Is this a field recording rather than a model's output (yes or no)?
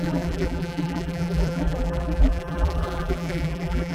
no